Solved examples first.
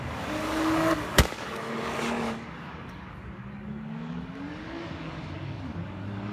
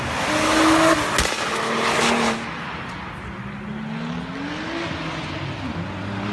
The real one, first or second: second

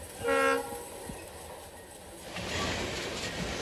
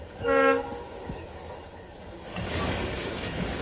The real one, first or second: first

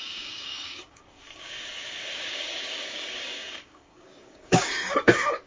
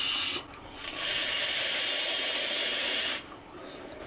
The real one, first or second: second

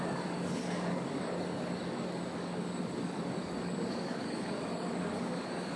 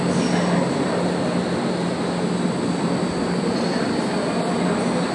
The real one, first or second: second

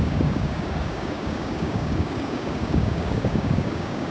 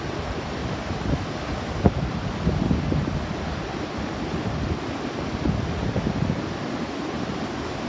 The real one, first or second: second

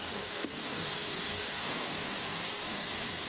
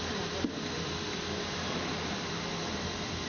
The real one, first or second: second